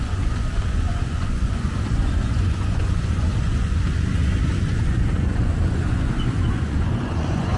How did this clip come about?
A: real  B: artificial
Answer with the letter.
B